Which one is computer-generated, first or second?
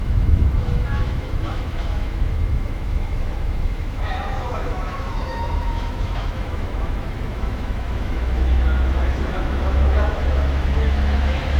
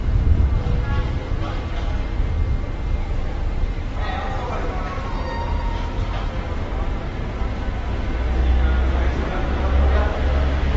first